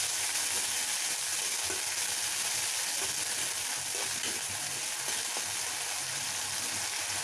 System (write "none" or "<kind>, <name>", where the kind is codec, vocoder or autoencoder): none